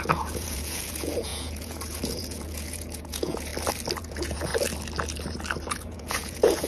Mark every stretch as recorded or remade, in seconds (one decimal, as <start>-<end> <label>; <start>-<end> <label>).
0.0-3.5 remade; 3.5-4.0 recorded; 4.0-4.5 remade; 4.5-5.7 recorded; 5.7-6.7 remade